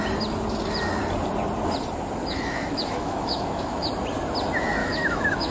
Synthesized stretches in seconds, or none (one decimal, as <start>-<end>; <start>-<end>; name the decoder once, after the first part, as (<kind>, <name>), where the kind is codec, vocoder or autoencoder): 2.2-3.9 (autoencoder, DAC-VAE); 4.8-5.5